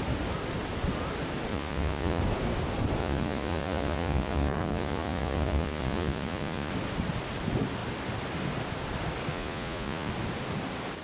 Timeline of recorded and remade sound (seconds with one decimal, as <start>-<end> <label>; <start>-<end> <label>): 0.0-1.5 recorded; 1.5-2.2 remade; 2.2-3.0 recorded; 3.0-6.7 remade; 6.7-9.3 recorded; 9.3-10.1 remade; 10.1-11.0 recorded